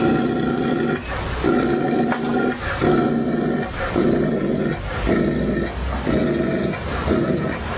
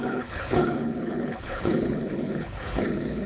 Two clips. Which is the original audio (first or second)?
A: first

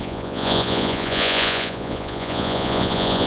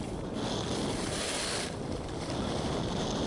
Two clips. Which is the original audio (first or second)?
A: second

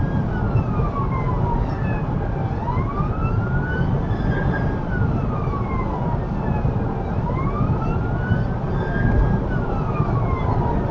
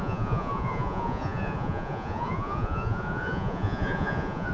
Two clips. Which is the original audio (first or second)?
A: first